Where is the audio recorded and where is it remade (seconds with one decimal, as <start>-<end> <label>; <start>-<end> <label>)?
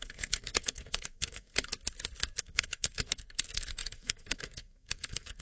0.0-1.5 remade; 1.5-2.4 recorded; 2.4-5.4 remade